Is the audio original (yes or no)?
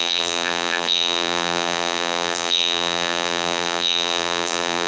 no